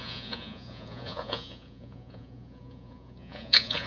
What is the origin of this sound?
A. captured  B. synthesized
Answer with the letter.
B